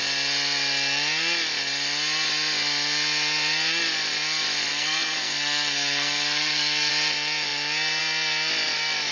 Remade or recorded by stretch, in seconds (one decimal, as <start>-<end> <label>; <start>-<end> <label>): 0.0-4.7 recorded; 4.7-6.9 remade; 6.9-9.1 recorded